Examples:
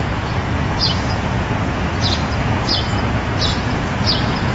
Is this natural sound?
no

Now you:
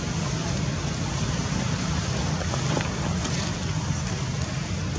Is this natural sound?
yes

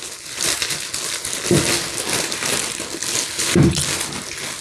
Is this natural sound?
yes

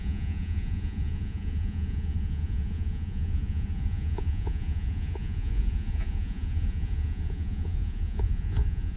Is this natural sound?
no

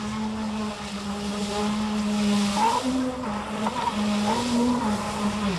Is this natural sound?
yes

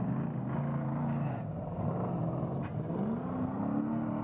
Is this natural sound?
yes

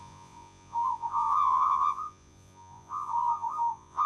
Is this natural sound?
no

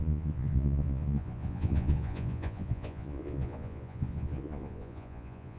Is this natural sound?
no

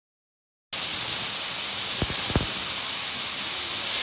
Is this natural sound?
yes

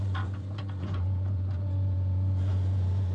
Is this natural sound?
no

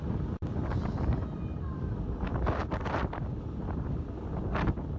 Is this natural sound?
yes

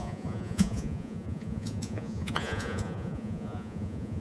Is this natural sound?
no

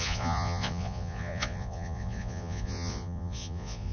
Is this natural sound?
no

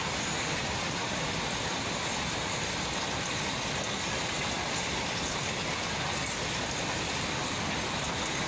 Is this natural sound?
yes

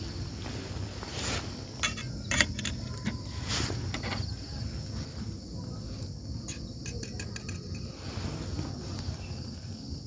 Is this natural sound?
yes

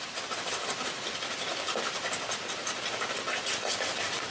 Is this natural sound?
yes